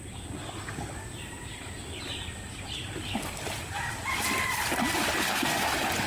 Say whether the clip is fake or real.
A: real